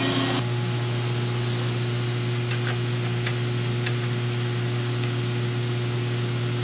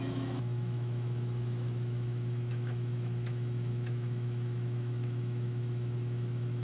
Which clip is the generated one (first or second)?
second